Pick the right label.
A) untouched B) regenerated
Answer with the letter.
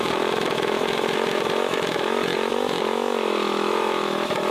B